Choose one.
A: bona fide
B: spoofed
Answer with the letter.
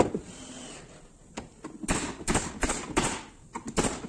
A